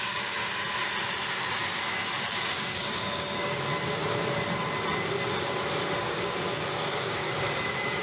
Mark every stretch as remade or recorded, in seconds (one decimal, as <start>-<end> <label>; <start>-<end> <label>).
0.0-0.4 remade; 0.4-2.3 recorded; 2.3-3.7 remade; 3.7-6.0 recorded; 6.0-8.0 remade